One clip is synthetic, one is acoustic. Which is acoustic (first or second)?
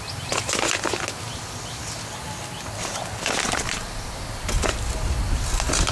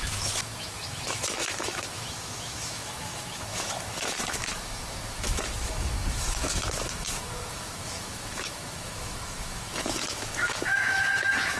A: first